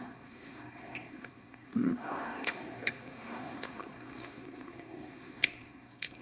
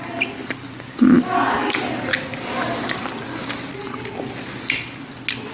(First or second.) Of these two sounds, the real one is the second